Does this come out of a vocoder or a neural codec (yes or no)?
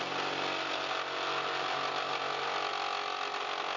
no